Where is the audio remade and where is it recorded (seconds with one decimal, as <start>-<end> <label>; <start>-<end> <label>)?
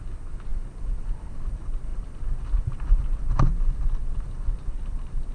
0.0-5.3 recorded